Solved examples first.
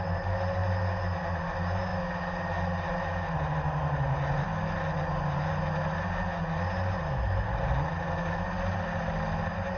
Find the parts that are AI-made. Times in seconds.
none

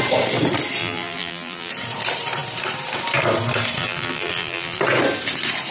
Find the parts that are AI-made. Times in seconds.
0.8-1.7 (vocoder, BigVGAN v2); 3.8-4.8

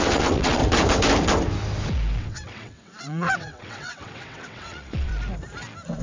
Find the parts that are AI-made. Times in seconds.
0.0-0.6 (vocoder, WaveNeXt); 2.2-5.1

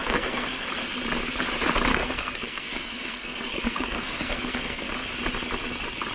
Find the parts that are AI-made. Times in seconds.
0.0-0.7 (codec, SNAC); 1.9-4.9

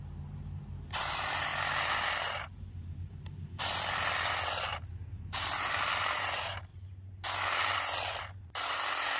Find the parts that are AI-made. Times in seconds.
0.0-1.5 (vocoder, BigVGAN v2); 5.3-6.7; 8.6-9.2

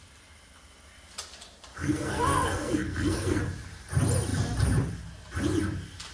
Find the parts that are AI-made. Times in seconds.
1.7-3.4 (codec, SNAC)

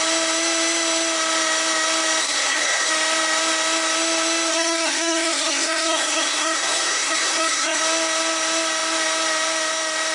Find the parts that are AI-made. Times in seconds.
2.2-2.9 (codec, SNAC); 4.5-7.8